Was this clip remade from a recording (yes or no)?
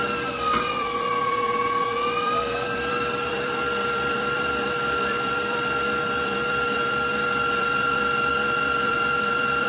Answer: yes